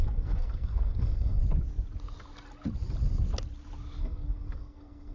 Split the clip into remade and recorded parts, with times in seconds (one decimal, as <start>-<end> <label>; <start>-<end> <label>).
0.0-1.4 remade; 1.4-4.0 recorded; 4.0-5.1 remade